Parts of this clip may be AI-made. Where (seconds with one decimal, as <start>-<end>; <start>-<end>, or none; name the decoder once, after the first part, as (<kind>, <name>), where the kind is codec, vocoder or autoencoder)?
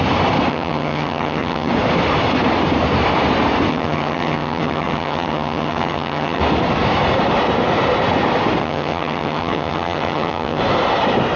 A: 0.5-1.7 (vocoder, HiFi-GAN); 3.7-6.4; 8.6-10.6